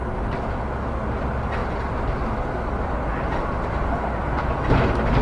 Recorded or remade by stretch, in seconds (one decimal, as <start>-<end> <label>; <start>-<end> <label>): 0.0-5.2 recorded